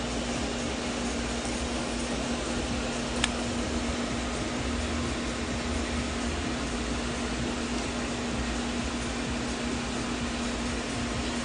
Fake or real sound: real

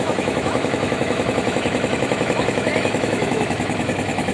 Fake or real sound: fake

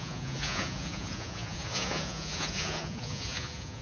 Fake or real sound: fake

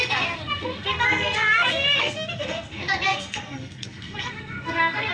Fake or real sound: fake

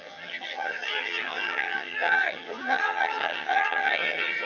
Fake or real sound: fake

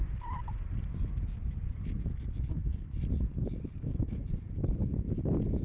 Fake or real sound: real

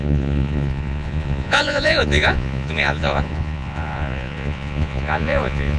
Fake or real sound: fake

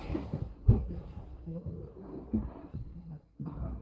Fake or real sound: fake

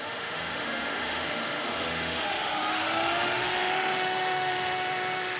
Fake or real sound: fake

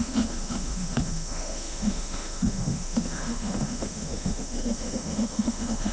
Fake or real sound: fake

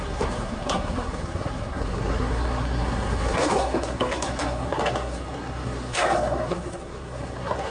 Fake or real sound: fake